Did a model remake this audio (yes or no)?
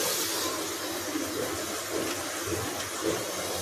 no